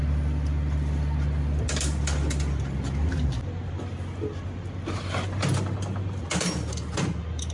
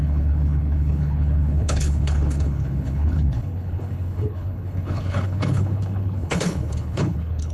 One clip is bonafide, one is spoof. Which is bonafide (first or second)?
first